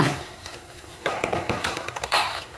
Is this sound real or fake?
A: fake